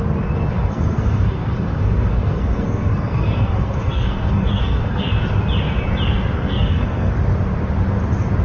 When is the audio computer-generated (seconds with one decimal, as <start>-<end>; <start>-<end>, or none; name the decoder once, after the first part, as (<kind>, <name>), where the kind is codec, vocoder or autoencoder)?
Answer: 0.5-5.1 (codec, SNAC); 6.4-7.1